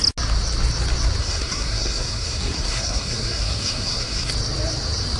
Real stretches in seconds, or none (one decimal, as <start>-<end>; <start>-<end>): 0.0-1.2; 4.3-5.2